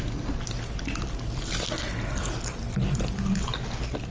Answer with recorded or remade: recorded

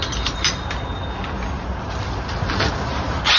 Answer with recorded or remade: recorded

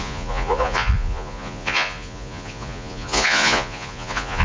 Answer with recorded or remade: remade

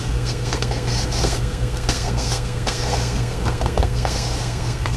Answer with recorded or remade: remade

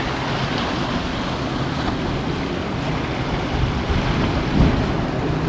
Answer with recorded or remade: recorded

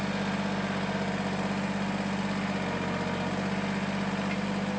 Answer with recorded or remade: recorded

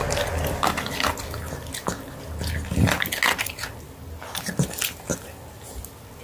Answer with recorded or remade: recorded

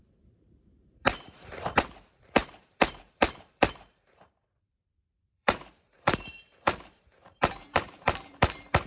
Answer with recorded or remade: remade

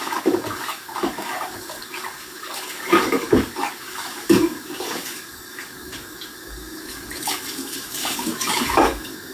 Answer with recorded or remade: remade